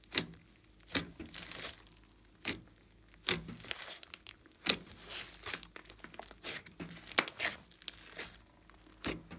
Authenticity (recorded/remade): recorded